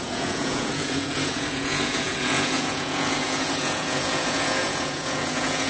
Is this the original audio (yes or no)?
no